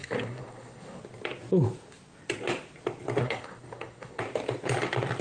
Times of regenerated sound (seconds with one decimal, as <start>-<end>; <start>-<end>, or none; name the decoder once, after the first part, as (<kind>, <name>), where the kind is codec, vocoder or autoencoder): 0.0-1.0 (codec, SNAC); 3.2-4.2